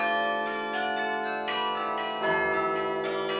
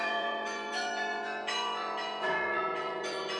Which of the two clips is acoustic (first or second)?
first